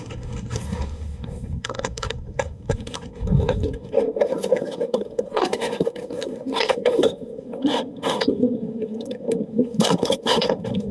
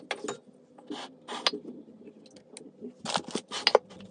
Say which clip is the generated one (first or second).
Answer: first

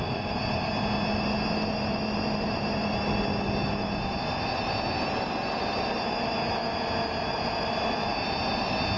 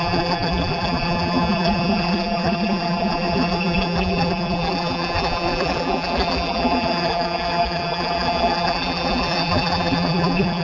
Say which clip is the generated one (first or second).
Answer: second